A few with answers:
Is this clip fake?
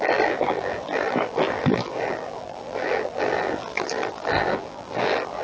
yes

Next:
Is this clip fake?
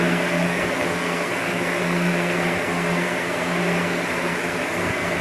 yes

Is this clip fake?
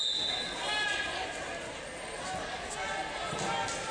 no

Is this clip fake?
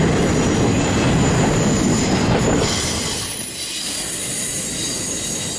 no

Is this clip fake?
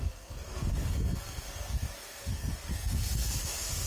yes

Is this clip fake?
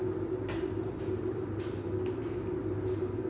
no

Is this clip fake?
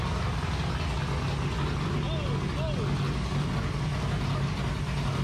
no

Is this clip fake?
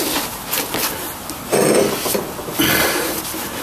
no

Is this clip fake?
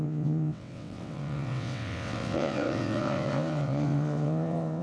yes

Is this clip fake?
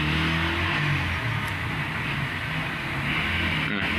no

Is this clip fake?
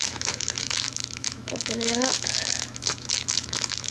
yes